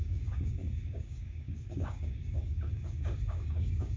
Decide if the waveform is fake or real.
fake